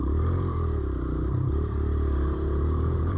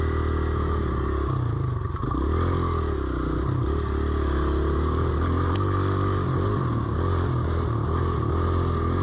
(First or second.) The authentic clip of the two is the second